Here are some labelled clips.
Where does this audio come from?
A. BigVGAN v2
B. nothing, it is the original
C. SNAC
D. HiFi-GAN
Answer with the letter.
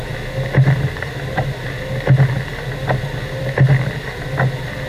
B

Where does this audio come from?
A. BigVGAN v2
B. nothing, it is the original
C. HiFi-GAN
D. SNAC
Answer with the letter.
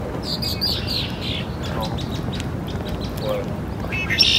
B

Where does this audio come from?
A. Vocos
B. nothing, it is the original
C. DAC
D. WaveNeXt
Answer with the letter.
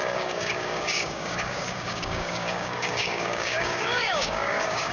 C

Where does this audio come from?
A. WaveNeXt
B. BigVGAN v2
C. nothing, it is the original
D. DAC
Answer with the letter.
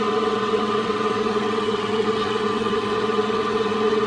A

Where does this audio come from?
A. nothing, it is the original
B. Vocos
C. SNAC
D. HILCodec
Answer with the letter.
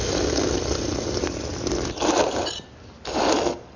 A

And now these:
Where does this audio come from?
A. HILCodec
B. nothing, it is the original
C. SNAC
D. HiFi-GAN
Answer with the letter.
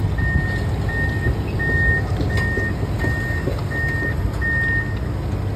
B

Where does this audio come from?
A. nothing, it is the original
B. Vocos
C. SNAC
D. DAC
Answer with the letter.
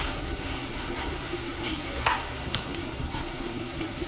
C